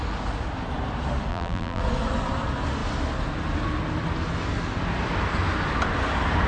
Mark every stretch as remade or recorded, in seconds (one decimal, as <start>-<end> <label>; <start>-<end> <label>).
0.0-1.3 recorded; 1.3-1.8 remade; 1.8-6.5 recorded